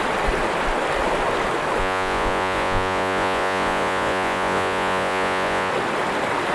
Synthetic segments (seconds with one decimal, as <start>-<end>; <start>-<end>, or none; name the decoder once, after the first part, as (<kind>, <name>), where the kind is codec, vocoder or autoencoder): 1.8-5.7 (vocoder, Vocos)